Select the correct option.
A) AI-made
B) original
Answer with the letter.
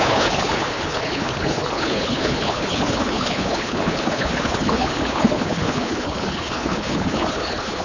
A